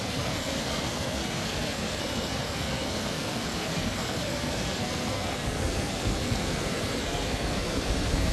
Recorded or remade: remade